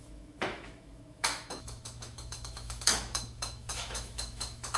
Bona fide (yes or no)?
no